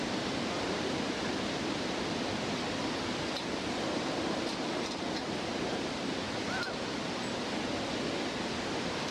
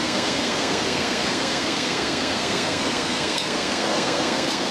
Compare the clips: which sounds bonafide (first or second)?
first